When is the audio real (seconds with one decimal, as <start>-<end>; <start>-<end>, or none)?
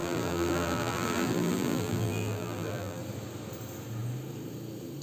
3.0-5.0